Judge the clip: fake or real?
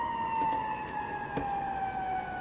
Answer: fake